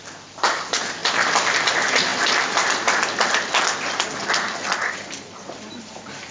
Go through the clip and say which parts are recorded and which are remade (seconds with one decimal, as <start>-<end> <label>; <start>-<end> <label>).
0.0-6.3 recorded